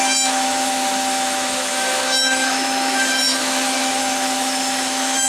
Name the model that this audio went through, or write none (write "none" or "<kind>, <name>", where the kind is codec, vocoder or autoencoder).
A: autoencoder, DAC-VAE